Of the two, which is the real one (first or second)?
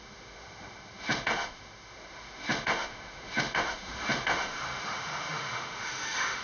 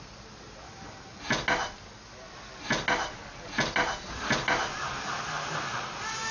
second